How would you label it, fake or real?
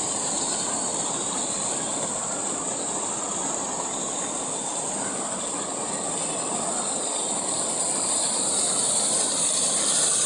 real